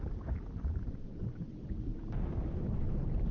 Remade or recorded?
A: recorded